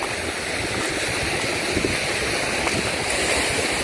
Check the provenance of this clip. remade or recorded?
recorded